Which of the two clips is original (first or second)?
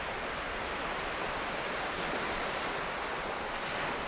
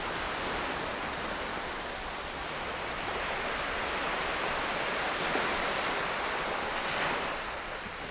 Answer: first